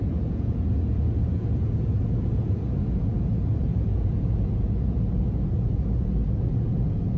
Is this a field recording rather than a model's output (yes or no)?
no